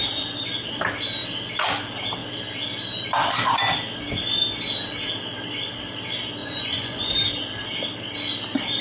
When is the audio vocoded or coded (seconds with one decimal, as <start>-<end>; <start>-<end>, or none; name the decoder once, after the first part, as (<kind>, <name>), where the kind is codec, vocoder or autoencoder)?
6.4-7.1 (vocoder, Vocos)